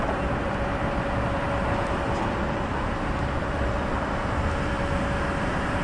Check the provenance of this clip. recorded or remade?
remade